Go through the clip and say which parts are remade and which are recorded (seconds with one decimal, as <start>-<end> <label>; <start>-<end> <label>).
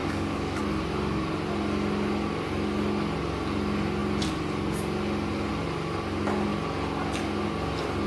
0.0-0.6 remade; 0.6-8.1 recorded